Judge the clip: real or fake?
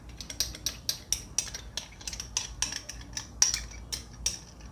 real